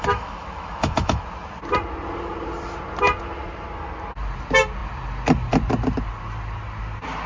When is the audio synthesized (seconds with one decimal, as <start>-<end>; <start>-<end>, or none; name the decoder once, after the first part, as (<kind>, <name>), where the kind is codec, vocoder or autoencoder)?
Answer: 0.0-1.2 (autoencoder, DAC-VAE)